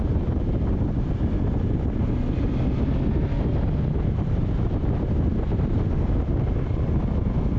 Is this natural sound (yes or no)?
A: yes